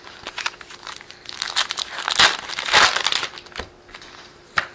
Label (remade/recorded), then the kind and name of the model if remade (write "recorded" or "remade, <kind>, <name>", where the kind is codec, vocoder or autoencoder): recorded